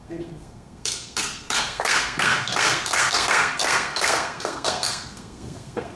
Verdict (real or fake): fake